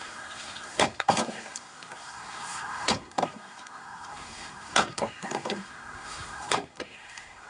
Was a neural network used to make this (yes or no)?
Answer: yes